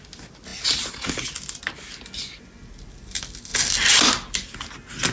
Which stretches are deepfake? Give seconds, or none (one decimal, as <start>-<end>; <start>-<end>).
none